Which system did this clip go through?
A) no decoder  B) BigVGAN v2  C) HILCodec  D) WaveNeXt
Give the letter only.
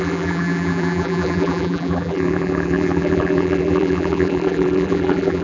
B